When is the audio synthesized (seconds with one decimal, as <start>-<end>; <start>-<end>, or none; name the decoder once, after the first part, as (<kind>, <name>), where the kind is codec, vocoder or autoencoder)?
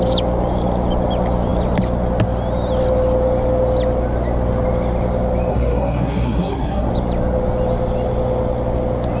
5.5-6.9 (codec, SNAC)